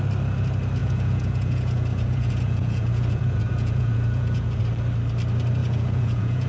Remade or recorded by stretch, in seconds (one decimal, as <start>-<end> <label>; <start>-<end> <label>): 0.0-0.8 recorded; 0.8-4.6 remade; 4.6-5.6 recorded; 5.6-6.5 remade